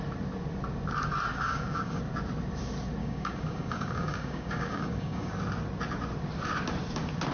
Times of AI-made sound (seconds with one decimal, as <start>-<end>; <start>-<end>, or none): 1.3-2.0; 3.0-5.3